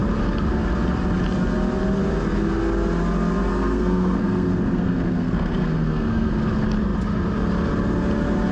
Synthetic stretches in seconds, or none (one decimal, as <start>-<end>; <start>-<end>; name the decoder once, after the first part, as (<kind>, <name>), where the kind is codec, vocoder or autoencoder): 3.5-6.3 (codec, SNAC)